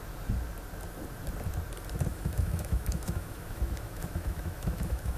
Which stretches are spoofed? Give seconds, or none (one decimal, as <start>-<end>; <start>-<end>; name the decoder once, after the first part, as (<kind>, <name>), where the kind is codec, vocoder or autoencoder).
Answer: 2.1-5.2 (autoencoder, DAC-VAE)